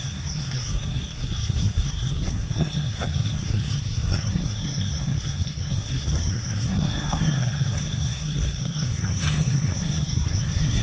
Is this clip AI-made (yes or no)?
yes